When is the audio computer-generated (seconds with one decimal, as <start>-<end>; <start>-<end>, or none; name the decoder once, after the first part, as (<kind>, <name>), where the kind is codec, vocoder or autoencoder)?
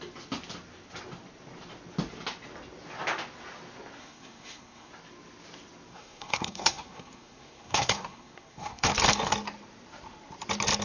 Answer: 4.0-4.9 (codec, SNAC); 5.9-8.9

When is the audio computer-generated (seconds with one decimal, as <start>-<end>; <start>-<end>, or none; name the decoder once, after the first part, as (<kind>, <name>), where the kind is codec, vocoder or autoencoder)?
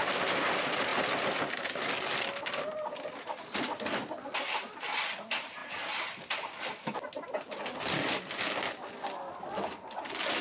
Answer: none